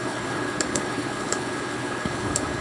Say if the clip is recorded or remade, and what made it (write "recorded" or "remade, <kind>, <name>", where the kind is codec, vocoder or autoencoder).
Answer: remade, codec, HILCodec